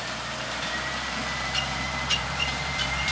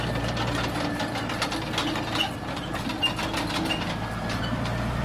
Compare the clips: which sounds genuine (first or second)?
second